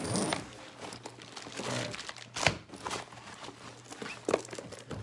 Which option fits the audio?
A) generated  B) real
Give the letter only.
B